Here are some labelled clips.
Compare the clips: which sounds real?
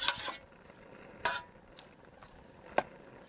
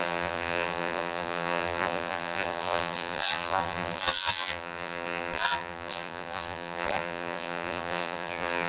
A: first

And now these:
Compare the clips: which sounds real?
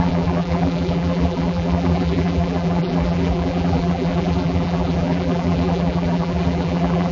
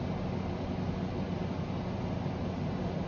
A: second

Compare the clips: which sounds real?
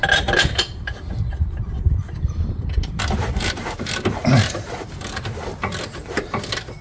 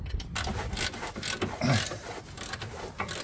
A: second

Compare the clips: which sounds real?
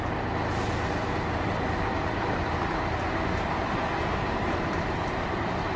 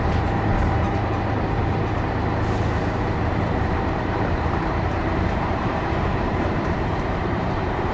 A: first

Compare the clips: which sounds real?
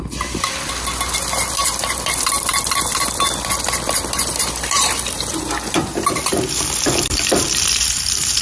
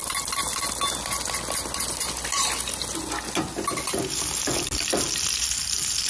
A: second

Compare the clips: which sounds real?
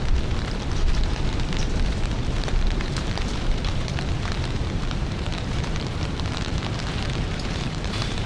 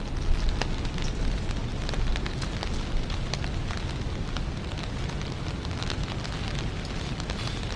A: second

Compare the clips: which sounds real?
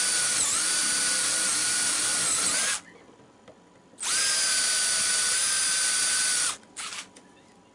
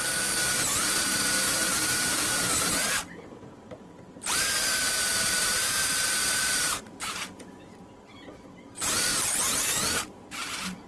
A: first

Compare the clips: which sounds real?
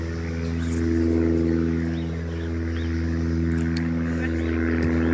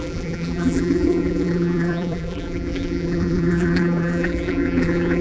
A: first